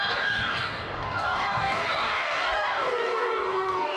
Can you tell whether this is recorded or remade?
remade